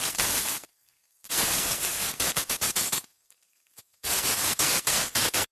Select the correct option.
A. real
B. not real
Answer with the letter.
B